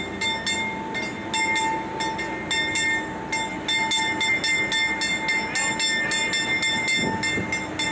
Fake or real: real